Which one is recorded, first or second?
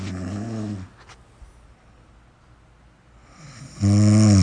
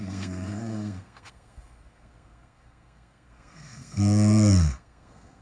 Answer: first